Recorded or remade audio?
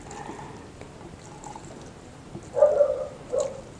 recorded